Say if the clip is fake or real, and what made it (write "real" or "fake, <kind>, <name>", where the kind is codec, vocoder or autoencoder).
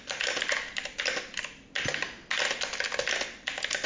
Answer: real